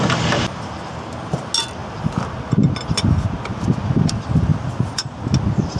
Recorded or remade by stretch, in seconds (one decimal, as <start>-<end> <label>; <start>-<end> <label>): 0.0-1.8 recorded; 1.8-2.6 remade; 2.6-4.5 recorded; 4.5-5.2 remade; 5.2-5.8 recorded

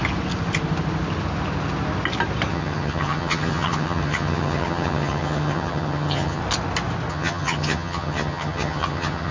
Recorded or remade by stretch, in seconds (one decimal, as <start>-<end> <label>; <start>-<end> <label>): 0.0-2.5 recorded; 2.5-6.4 remade; 6.4-7.1 recorded; 7.1-9.3 remade

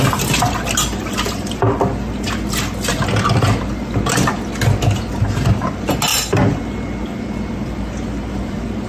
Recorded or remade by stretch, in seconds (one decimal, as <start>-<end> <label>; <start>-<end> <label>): 0.0-8.9 recorded

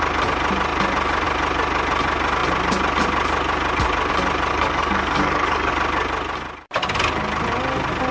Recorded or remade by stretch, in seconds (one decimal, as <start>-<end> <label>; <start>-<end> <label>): 0.0-4.5 recorded; 4.5-5.7 remade; 5.7-8.1 recorded

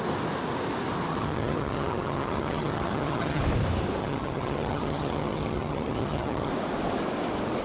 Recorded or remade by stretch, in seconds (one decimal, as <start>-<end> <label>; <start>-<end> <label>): 0.0-1.1 recorded; 1.1-3.4 remade; 3.4-4.0 recorded; 4.0-6.5 remade; 6.5-7.6 recorded

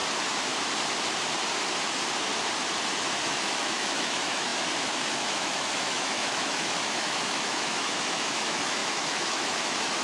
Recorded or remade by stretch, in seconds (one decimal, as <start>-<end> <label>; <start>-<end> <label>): 0.0-3.2 recorded; 3.2-10.0 remade